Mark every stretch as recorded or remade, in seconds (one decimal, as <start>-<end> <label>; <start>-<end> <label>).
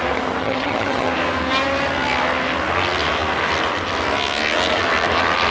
0.0-0.4 recorded; 0.4-1.1 remade; 1.1-5.5 recorded